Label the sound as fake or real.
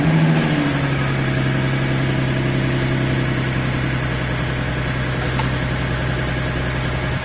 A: real